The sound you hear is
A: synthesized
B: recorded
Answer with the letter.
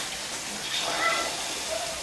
A